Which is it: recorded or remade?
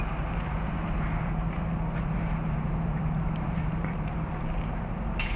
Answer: remade